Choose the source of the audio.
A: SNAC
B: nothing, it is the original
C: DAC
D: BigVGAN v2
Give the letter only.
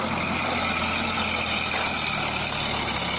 B